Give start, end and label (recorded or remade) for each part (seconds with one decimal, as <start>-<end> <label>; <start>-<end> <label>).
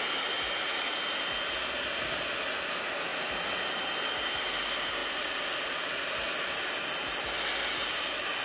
0.0-8.4 recorded